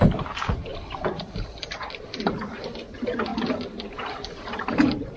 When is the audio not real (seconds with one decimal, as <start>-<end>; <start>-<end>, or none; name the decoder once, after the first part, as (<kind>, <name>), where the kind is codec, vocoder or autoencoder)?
0.0-3.3 (vocoder, BigVGAN v2); 3.9-5.2

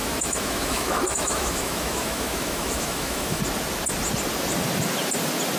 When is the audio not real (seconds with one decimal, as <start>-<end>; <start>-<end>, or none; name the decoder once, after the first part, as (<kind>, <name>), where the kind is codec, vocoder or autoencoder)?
0.0-3.4 (autoencoder, DAC-VAE)

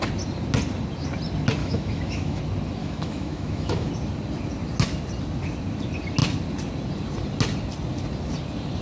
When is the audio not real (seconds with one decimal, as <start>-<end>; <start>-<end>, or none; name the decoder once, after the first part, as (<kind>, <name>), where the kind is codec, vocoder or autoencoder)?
1.6-2.4 (autoencoder, DAC-VAE); 2.8-3.9

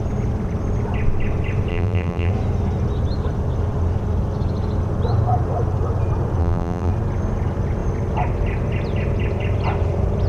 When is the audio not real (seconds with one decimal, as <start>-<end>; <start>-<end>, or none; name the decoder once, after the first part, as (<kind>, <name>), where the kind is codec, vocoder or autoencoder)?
1.7-2.3 (vocoder, BigVGAN v2); 6.4-6.9

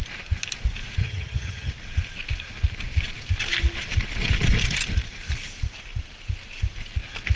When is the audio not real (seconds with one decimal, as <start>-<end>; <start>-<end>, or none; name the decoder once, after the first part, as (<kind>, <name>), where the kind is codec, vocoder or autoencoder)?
1.0-1.7 (vocoder, HiFi-GAN)

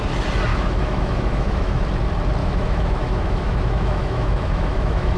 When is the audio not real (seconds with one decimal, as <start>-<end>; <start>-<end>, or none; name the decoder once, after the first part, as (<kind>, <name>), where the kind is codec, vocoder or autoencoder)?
0.5-1.8 (autoencoder, DAC-VAE); 2.4-5.2

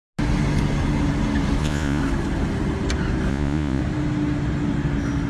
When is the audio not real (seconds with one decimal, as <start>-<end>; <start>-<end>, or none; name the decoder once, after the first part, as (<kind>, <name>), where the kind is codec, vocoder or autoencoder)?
1.6-2.0 (vocoder, Vocos); 3.3-3.8

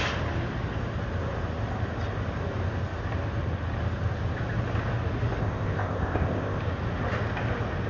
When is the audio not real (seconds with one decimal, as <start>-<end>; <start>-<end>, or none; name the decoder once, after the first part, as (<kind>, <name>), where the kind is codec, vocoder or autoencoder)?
5.4-6.6 (codec, ZipCodec)